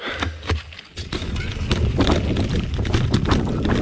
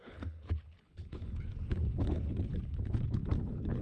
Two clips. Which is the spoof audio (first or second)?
second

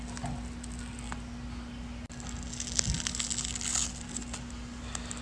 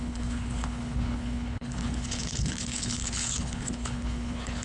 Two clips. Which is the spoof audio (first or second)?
second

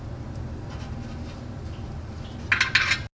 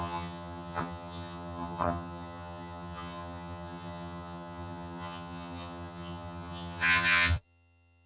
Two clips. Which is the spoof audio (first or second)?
second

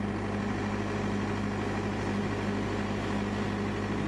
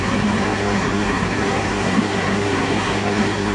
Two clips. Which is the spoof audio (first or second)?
second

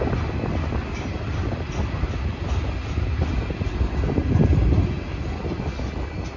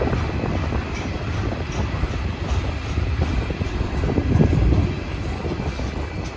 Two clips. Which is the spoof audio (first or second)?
second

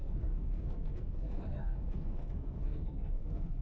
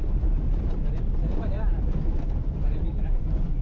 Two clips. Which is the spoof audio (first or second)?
first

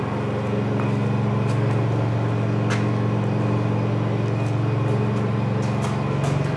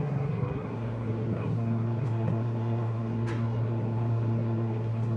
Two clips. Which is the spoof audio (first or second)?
second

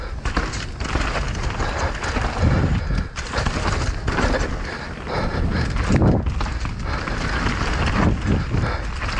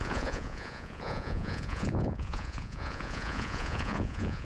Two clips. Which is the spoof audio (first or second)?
second